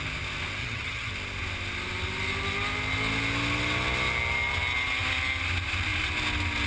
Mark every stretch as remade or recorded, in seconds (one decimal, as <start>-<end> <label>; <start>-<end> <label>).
0.0-0.6 recorded; 0.6-1.1 remade; 1.1-6.7 recorded